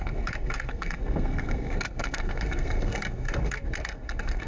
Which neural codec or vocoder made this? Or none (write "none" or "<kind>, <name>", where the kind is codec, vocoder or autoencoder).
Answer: codec, SNAC